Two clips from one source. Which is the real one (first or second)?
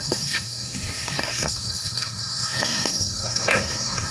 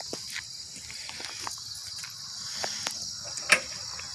second